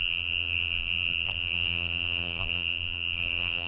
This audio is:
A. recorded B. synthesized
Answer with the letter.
B